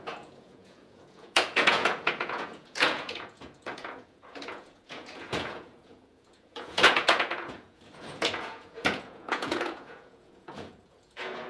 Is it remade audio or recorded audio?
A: remade